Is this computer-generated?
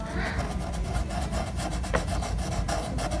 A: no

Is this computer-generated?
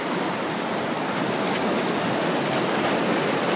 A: no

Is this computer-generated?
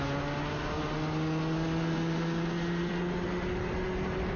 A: no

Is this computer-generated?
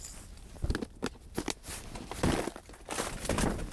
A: no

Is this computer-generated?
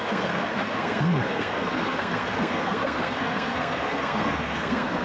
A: yes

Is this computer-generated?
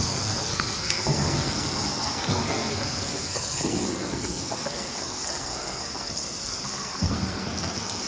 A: yes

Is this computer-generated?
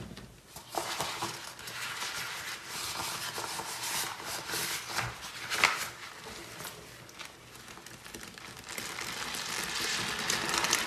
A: no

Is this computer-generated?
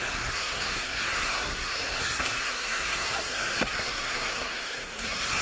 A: yes